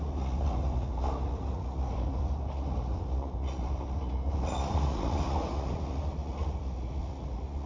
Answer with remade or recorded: remade